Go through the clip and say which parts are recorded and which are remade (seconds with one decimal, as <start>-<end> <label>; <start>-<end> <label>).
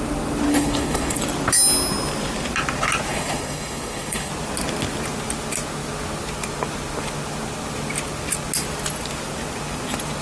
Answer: 0.0-0.5 recorded; 0.5-1.2 remade; 1.2-3.1 recorded; 3.1-4.3 remade; 4.3-10.2 recorded